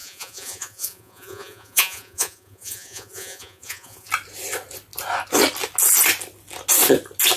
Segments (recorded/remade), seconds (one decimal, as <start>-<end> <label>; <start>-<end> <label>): 0.0-4.1 remade; 4.1-7.4 recorded